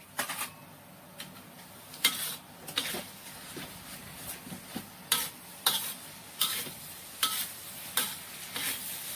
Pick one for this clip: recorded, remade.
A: recorded